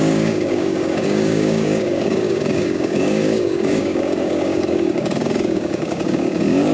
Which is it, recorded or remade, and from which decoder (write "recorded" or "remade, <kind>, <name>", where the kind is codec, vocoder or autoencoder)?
remade, codec, DAC